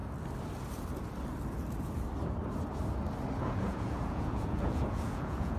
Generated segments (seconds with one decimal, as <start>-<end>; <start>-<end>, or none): 3.4-5.6